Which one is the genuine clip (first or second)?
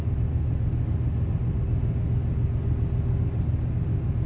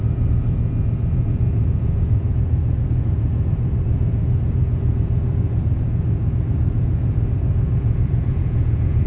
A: first